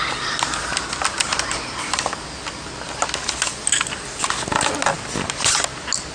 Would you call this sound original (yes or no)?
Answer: yes